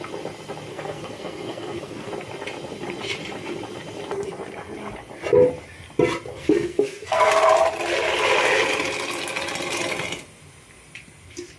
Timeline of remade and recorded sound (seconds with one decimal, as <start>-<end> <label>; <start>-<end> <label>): 0.0-0.7 recorded; 0.7-2.1 remade; 2.1-6.3 recorded; 6.3-7.3 remade; 7.3-11.6 recorded